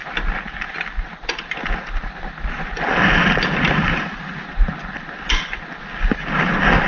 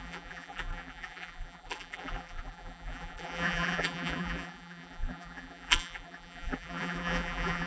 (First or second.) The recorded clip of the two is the first